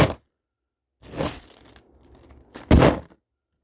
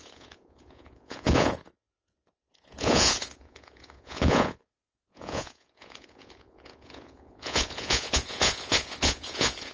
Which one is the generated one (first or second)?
second